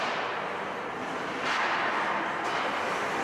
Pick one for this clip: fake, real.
real